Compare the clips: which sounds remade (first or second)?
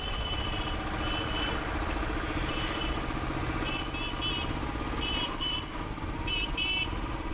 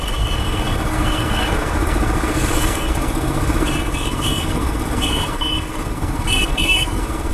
second